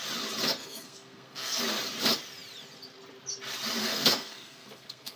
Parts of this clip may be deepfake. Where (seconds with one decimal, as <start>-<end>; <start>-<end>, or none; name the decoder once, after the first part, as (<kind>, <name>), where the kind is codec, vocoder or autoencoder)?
0.6-1.6 (codec, SNAC); 3.8-5.2